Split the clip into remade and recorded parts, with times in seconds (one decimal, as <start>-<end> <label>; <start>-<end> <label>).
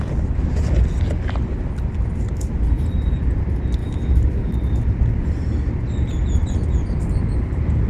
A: 0.0-3.8 recorded; 3.8-4.5 remade; 4.5-7.9 recorded